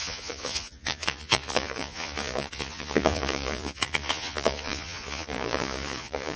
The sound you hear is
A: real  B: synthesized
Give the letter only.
B